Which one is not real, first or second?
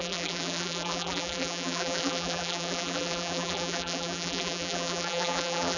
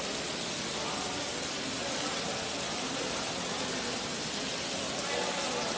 first